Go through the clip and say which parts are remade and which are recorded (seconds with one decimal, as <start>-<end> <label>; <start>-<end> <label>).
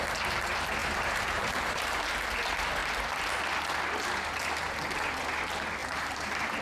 0.0-0.8 recorded; 0.8-2.0 remade; 2.0-5.8 recorded; 5.8-6.6 remade